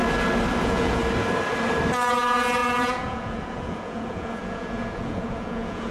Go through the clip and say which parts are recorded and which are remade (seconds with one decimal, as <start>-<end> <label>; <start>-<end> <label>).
0.0-0.6 recorded; 0.6-1.0 remade; 1.0-2.1 recorded; 2.1-5.9 remade